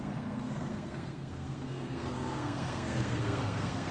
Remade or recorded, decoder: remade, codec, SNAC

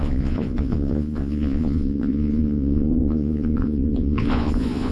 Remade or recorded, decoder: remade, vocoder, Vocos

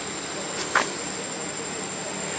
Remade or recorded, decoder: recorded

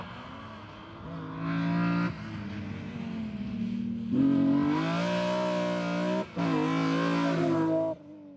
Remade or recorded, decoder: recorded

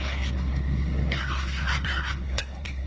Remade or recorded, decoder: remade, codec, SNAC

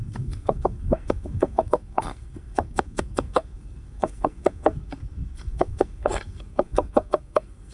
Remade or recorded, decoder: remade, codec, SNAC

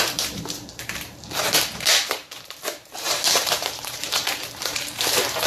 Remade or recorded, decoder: remade, vocoder, BigVGAN v2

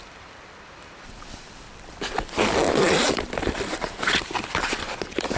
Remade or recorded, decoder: remade, vocoder, BigVGAN v2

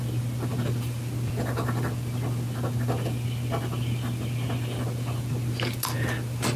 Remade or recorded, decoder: recorded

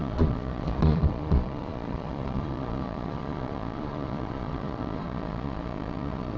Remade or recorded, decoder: remade, vocoder, Vocos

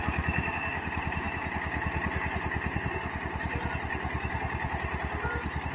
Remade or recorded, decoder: recorded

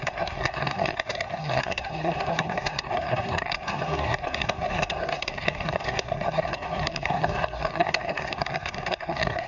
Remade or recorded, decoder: remade, codec, SNAC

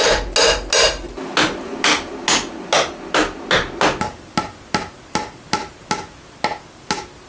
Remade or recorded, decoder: recorded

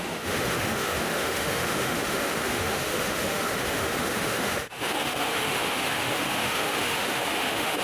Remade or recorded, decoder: remade, autoencoder, DAC-VAE